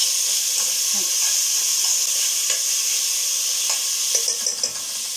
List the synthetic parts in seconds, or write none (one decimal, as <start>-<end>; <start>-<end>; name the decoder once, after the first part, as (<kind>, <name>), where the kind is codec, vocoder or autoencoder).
1.7-4.8 (vocoder, BigVGAN v2)